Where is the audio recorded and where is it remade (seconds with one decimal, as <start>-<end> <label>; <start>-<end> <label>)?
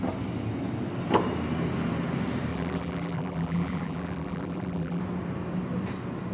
0.0-2.5 recorded; 2.5-5.0 remade; 5.0-6.3 recorded